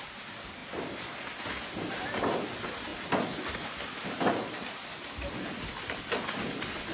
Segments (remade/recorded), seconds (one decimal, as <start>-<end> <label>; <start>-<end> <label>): 0.0-6.9 remade